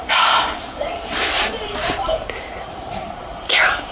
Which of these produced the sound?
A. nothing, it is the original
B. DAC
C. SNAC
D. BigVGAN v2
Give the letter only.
D